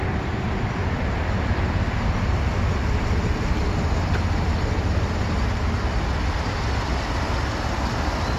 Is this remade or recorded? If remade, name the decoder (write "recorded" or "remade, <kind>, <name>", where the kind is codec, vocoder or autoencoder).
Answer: recorded